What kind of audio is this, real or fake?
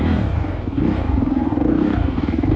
fake